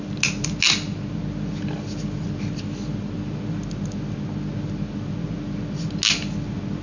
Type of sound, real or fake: real